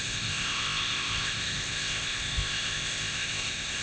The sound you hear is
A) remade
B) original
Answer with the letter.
A